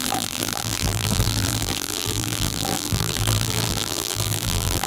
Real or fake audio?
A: fake